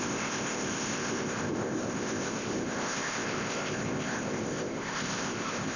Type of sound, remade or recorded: remade